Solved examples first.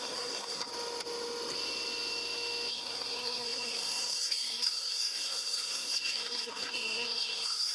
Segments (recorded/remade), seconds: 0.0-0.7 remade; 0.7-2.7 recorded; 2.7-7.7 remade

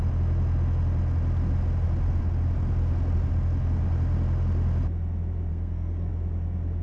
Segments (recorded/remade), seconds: 0.0-5.5 recorded; 5.5-6.1 remade; 6.1-6.8 recorded